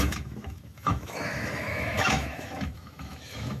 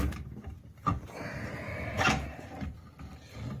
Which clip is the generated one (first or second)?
first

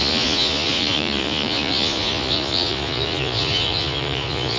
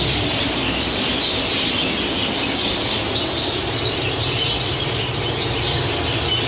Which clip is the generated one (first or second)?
first